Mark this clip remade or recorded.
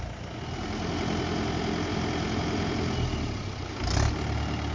recorded